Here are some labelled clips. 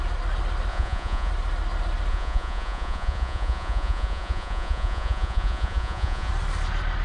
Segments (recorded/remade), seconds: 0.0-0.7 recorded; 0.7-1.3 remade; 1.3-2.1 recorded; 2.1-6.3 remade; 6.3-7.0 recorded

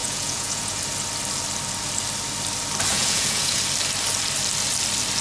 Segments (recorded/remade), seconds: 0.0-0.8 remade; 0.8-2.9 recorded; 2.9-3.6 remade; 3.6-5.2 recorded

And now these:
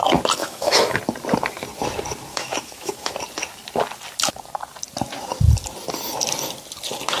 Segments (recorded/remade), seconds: 0.0-0.4 recorded; 0.4-1.0 remade; 1.0-2.3 recorded; 2.3-3.1 remade; 3.1-7.2 recorded

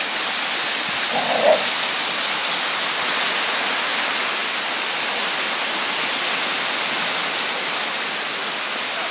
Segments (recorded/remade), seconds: 0.0-9.1 recorded

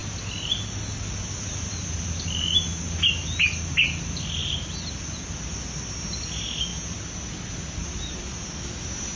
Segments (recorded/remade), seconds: 0.0-9.2 recorded

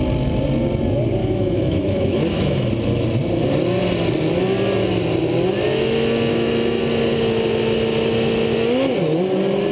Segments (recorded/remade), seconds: 0.0-1.2 recorded; 1.2-2.7 remade; 2.7-6.3 recorded; 6.3-6.8 remade; 6.8-9.7 recorded

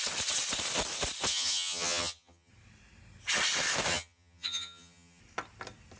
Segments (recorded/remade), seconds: 0.0-1.3 recorded; 1.3-2.5 remade; 2.5-3.9 recorded; 3.9-5.2 remade; 5.2-6.0 recorded

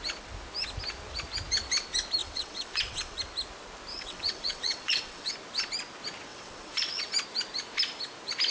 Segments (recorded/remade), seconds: 0.0-2.2 recorded; 2.2-3.2 remade; 3.2-3.9 recorded; 3.9-5.3 remade; 5.3-6.3 recorded; 6.3-7.1 remade; 7.1-8.5 recorded